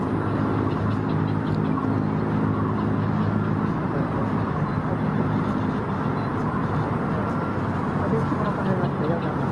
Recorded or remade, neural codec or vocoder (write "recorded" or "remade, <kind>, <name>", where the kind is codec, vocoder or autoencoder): recorded